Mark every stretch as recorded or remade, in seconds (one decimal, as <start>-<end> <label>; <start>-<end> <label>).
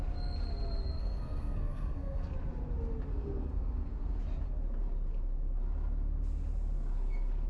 0.0-1.0 recorded; 1.0-2.3 remade; 2.3-3.1 recorded; 3.1-4.2 remade; 4.2-7.5 recorded